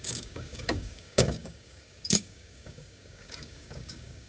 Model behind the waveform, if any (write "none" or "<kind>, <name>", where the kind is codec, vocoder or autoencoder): codec, DAC